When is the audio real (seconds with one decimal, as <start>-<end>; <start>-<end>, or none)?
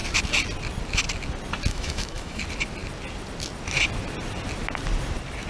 0.0-1.7; 2.4-5.5